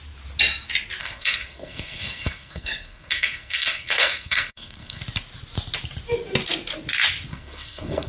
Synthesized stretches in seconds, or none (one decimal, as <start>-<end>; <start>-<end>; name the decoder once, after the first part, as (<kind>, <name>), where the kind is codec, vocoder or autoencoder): 1.0-5.0 (codec, SNAC); 7.3-8.1